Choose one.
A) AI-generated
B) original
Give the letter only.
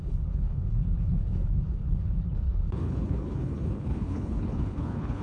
A